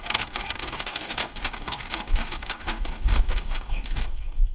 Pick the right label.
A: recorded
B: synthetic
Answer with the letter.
B